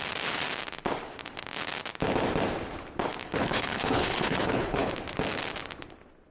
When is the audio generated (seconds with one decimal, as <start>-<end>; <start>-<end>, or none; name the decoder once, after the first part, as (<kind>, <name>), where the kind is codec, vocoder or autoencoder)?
3.2-4.9 (codec, HILCodec)